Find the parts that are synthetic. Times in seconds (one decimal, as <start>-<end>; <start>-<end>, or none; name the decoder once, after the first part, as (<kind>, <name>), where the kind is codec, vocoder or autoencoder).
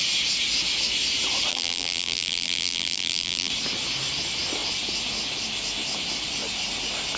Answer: 1.5-3.5 (vocoder, BigVGAN v2)